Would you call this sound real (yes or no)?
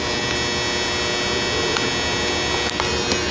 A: yes